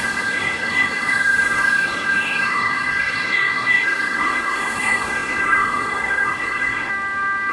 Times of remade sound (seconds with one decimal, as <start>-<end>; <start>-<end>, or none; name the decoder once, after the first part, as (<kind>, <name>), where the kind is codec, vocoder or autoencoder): 0.0-6.9 (codec, SNAC)